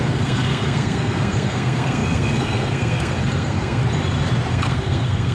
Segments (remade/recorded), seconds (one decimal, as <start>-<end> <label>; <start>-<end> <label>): 0.0-3.8 remade; 3.8-4.5 recorded; 4.5-5.3 remade